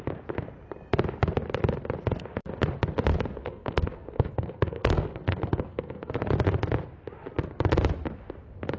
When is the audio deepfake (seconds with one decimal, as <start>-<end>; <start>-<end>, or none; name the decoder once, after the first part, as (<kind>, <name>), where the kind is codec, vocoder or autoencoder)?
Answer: 3.4-6.1 (codec, SNAC)